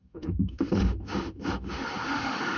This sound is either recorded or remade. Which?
remade